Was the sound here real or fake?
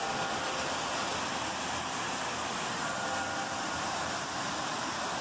real